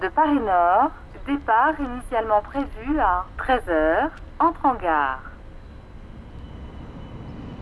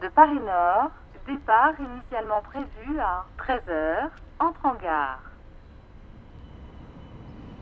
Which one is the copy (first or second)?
second